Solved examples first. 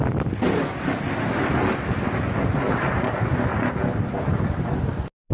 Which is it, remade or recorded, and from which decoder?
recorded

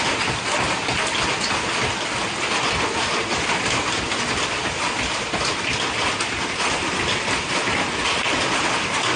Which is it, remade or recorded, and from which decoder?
recorded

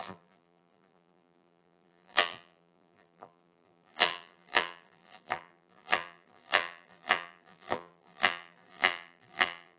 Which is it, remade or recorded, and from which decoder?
remade, vocoder, BigVGAN v2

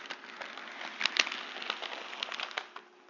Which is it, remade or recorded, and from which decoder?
recorded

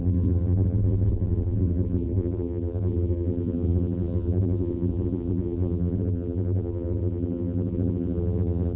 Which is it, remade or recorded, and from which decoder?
remade, vocoder, BigVGAN v2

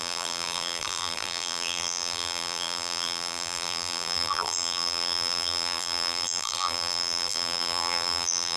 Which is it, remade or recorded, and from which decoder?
remade, vocoder, BigVGAN v2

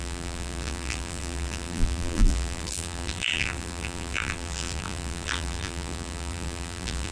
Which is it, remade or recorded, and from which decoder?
remade, vocoder, BigVGAN v2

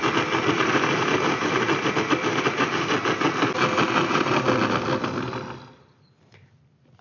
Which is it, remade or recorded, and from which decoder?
recorded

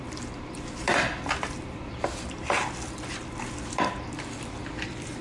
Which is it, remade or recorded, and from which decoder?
remade, vocoder, BigVGAN v2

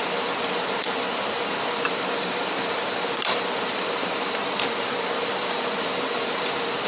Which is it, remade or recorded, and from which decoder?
remade, vocoder, BigVGAN v2